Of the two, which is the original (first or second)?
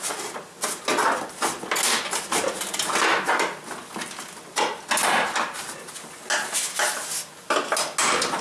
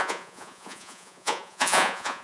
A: first